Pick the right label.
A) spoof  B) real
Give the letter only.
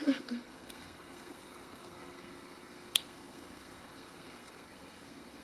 A